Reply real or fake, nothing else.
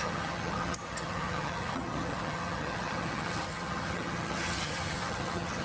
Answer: fake